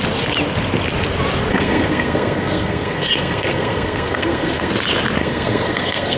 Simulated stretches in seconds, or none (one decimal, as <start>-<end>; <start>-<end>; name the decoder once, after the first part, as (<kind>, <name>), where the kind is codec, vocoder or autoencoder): 1.5-4.7 (codec, SNAC); 5.2-6.2